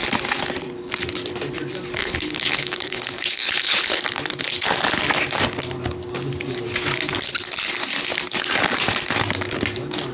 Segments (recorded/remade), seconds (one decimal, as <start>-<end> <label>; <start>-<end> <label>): 0.0-2.0 recorded; 2.0-4.0 remade; 4.0-10.1 recorded